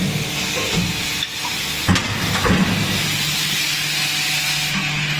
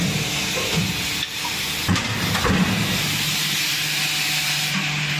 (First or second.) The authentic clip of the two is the first